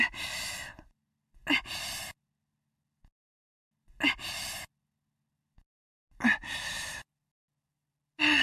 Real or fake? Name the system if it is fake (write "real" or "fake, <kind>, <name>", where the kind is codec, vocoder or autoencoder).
real